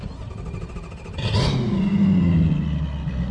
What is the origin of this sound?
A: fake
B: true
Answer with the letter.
B